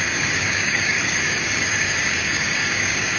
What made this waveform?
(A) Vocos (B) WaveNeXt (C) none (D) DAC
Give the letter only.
D